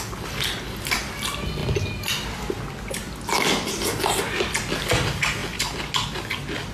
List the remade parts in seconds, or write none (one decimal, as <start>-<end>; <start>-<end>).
none